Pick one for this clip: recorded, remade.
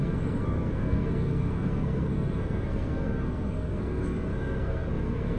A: remade